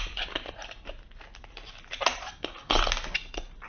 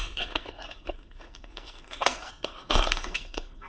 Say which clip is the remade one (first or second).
second